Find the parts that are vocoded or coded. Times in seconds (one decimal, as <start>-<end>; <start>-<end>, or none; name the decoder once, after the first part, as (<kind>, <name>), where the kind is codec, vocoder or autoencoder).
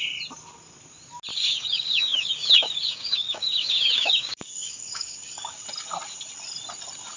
1.3-5.6 (codec, DAC)